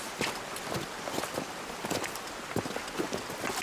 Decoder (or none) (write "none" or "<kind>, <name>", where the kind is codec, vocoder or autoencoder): none